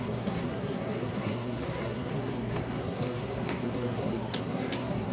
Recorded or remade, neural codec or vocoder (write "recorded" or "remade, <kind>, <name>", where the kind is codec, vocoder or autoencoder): remade, codec, SNAC